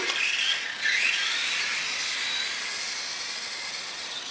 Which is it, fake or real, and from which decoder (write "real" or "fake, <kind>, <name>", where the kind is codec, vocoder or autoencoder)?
real